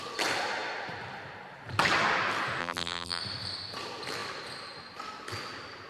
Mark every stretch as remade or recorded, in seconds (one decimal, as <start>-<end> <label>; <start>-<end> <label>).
0.0-2.6 recorded; 2.6-3.2 remade; 3.2-5.9 recorded